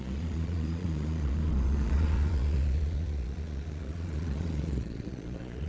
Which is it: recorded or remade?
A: remade